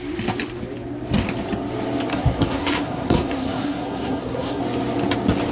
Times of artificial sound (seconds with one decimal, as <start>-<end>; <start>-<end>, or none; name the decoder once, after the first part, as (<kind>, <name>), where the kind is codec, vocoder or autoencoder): 2.1-4.6 (codec, SNAC)